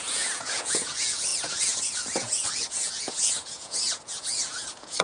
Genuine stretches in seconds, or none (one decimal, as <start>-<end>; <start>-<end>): none